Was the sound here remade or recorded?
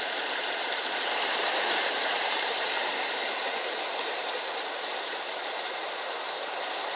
remade